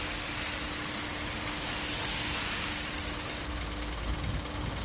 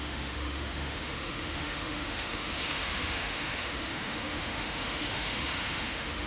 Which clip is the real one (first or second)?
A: first